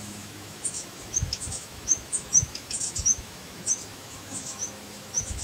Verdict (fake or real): fake